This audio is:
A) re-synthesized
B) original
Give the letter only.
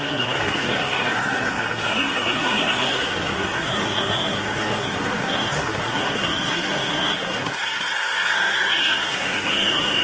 A